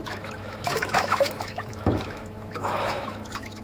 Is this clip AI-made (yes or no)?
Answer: yes